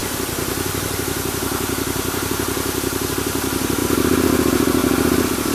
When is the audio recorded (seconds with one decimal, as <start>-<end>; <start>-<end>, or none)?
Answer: none